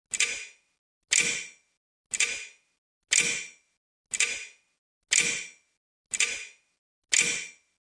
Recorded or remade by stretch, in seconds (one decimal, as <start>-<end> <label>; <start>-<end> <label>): 0.0-8.0 recorded